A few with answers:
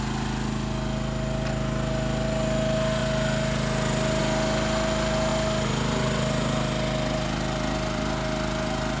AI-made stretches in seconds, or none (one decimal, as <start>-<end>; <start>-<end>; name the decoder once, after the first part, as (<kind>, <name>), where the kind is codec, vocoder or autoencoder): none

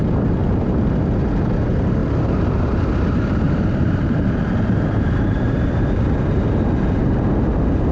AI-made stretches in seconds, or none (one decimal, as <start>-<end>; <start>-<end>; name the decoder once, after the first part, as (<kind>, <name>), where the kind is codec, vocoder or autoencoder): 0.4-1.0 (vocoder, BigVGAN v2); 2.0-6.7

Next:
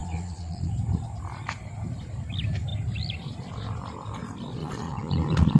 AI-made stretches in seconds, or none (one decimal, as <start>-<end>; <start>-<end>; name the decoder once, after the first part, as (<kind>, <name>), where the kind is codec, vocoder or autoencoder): 0.0-0.7 (vocoder, Vocos); 4.6-5.6